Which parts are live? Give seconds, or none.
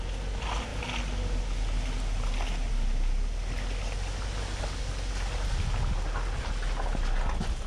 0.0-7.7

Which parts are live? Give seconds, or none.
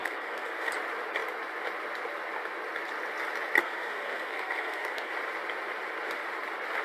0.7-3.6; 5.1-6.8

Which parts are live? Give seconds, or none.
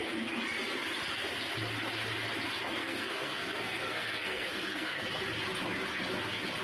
0.0-2.8; 5.1-6.6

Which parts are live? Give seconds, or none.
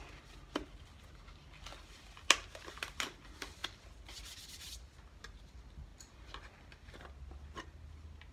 0.0-8.3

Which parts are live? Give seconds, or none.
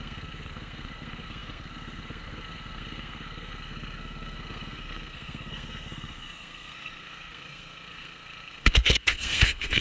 none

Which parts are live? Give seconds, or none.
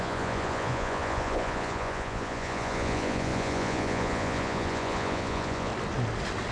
5.7-6.5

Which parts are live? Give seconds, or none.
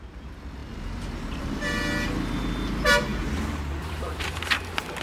0.0-3.1; 4.4-5.0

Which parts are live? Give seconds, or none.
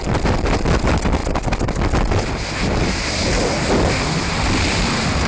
3.2-3.8